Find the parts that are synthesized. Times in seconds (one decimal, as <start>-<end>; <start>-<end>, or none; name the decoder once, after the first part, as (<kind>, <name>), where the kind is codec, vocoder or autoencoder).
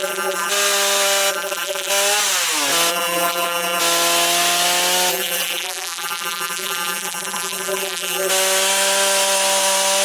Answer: 0.0-0.5 (vocoder, BigVGAN v2); 1.3-1.9; 2.9-3.8; 5.1-8.3